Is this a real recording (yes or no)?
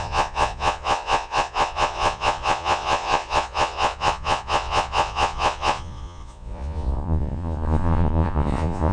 no